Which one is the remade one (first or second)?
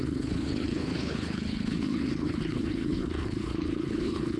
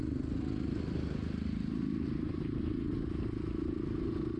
first